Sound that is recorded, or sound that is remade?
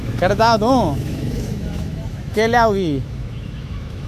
remade